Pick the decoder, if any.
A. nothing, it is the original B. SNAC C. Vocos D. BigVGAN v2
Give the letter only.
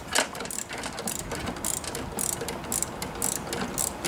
A